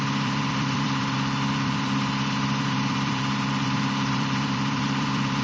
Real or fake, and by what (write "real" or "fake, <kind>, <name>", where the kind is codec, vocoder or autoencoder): fake, vocoder, BigVGAN v2